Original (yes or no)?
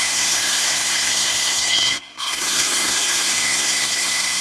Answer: no